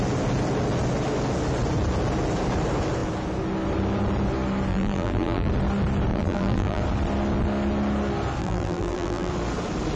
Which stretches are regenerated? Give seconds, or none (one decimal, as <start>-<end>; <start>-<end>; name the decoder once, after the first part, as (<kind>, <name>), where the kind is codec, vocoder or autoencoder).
4.7-5.5 (vocoder, BigVGAN v2); 6.1-6.8; 8.4-9.3